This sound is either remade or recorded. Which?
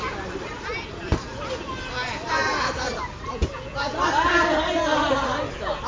recorded